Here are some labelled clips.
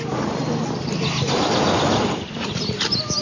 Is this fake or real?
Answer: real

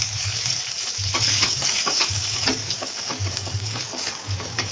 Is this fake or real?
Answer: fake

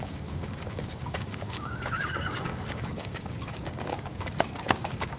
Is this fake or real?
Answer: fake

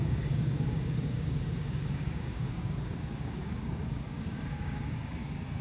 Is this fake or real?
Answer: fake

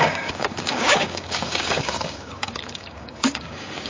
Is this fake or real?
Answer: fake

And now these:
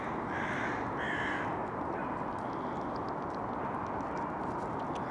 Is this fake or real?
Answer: real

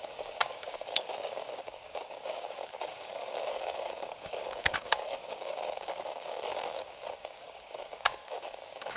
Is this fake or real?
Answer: fake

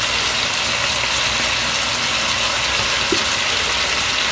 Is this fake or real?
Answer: real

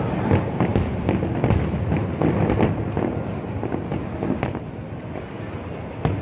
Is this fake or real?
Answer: real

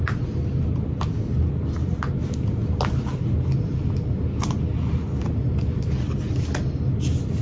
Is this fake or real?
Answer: real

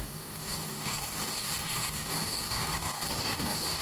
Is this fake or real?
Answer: fake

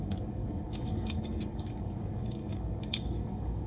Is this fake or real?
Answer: fake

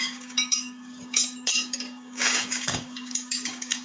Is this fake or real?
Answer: fake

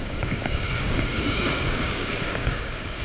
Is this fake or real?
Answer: fake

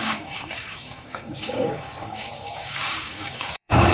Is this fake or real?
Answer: fake